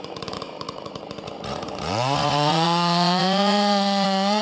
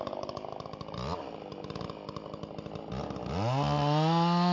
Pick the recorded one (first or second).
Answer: second